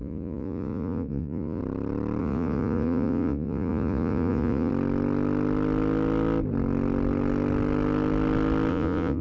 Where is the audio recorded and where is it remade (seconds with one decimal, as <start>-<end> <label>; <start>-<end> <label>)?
0.0-1.6 remade; 1.6-2.2 recorded; 2.2-4.7 remade; 4.7-8.7 recorded; 8.7-9.2 remade